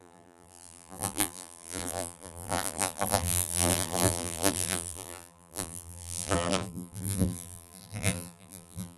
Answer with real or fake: fake